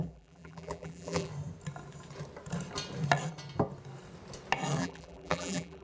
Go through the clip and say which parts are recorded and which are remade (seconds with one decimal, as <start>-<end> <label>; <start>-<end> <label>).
0.0-1.3 remade; 1.3-4.8 recorded; 4.8-5.8 remade